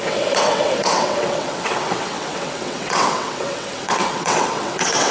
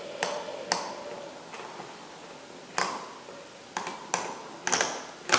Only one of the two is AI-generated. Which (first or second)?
first